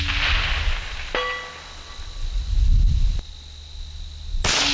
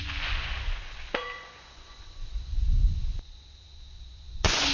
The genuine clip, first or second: first